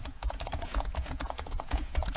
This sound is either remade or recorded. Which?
remade